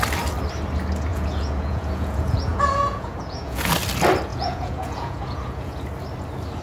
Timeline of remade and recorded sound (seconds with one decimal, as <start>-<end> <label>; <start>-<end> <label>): 0.0-1.1 recorded; 1.1-3.7 remade; 3.7-4.3 recorded; 4.3-5.8 remade; 5.8-6.6 recorded